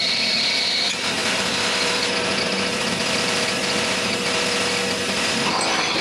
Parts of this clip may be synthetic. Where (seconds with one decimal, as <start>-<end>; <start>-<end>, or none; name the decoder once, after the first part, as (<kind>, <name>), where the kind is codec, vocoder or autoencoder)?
none